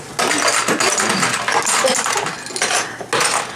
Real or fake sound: real